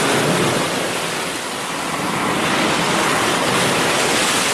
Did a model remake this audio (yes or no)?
no